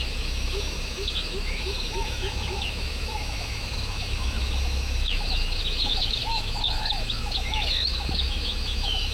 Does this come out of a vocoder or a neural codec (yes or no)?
yes